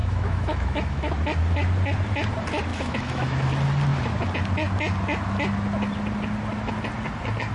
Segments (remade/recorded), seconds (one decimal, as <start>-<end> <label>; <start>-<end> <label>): 0.0-1.1 remade; 1.1-2.7 recorded; 2.7-3.5 remade; 3.5-7.5 recorded